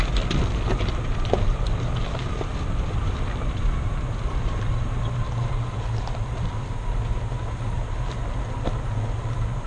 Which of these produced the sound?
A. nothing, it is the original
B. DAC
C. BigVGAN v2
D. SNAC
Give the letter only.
A